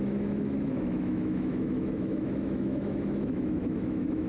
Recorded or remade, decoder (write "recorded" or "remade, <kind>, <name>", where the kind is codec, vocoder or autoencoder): remade, autoencoder, DAC-VAE